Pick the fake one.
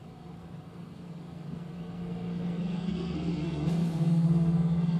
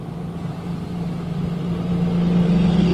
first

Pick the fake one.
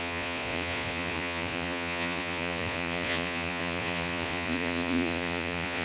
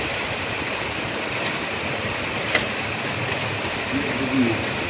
first